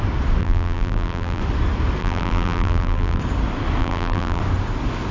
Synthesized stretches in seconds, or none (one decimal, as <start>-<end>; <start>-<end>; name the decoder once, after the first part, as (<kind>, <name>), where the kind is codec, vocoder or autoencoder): 0.4-1.4 (vocoder, BigVGAN v2); 2.0-3.2; 3.8-4.4